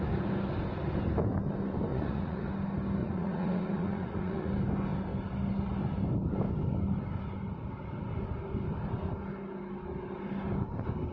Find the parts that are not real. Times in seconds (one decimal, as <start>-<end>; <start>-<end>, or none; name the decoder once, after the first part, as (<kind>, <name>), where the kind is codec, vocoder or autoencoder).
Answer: 1.9-2.5 (vocoder, Vocos); 3.0-4.5